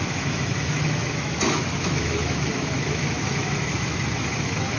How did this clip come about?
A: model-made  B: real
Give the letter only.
A